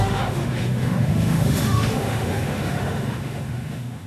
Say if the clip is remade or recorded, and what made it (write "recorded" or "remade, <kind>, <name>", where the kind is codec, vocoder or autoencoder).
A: remade, autoencoder, DAC-VAE